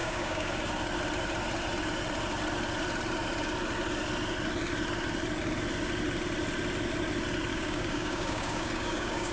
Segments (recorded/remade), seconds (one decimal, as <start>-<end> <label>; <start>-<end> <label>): 0.0-0.5 remade; 0.5-7.5 recorded; 7.5-9.3 remade